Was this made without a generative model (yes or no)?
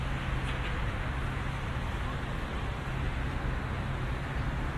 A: yes